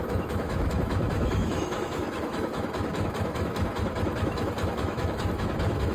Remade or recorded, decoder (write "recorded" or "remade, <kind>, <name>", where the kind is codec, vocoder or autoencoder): remade, autoencoder, DAC-VAE